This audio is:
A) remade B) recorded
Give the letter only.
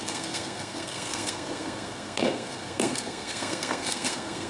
A